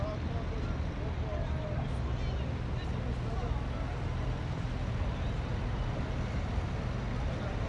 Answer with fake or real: real